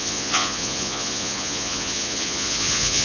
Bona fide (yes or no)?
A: no